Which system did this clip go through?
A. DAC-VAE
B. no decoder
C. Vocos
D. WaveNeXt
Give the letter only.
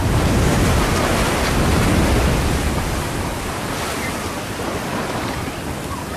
B